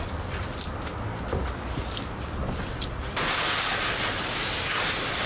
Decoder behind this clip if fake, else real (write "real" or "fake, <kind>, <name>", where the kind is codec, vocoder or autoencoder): real